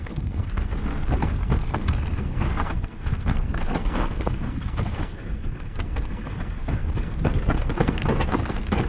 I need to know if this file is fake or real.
fake